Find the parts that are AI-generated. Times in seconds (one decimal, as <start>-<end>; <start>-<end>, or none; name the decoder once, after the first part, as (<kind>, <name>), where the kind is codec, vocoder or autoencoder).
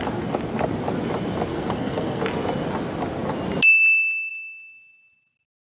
1.5-2.2 (codec, SNAC)